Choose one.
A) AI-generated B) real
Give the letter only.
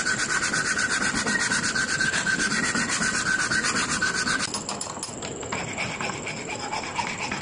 B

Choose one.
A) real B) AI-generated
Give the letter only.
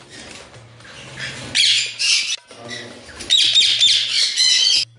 A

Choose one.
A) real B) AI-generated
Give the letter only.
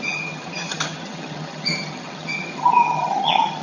B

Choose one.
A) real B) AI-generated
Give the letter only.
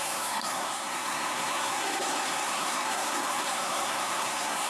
B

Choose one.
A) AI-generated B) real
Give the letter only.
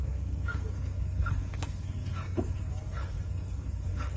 A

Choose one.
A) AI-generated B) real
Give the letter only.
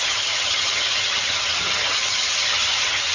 A